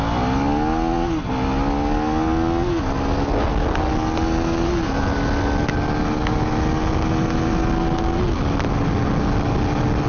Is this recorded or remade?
recorded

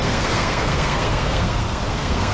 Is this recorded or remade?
remade